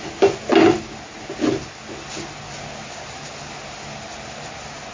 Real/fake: real